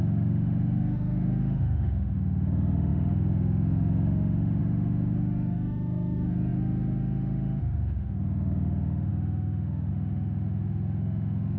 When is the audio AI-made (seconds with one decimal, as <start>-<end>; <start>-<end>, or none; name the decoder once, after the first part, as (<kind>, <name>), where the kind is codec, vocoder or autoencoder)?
0.0-11.6 (autoencoder, DAC-VAE)